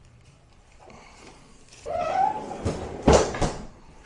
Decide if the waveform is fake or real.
fake